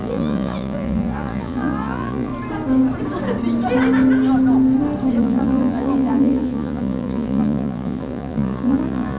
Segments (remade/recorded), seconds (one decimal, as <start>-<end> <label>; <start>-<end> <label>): 0.0-2.3 remade; 2.3-5.2 recorded; 5.2-9.2 remade